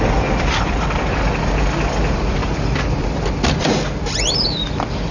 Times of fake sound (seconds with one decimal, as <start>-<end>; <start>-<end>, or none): none